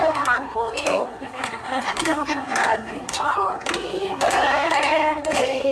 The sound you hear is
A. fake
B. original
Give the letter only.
A